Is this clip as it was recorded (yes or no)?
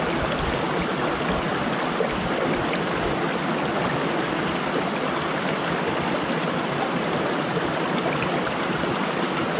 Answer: yes